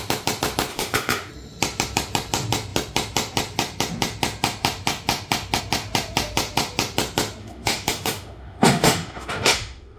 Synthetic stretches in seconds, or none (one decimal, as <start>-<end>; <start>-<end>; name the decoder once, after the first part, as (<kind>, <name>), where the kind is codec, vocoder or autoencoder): 0.7-1.3 (autoencoder, DAC-VAE); 7.4-10.0